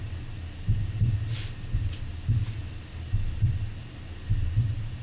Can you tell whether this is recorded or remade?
recorded